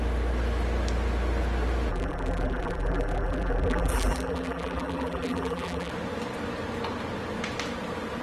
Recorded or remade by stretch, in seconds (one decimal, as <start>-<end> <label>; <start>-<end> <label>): 0.0-1.9 recorded; 1.9-5.9 remade; 5.9-8.2 recorded